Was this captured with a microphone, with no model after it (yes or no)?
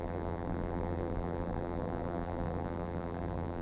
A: no